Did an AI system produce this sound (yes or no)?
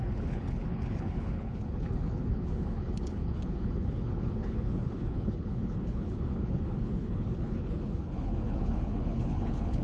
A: yes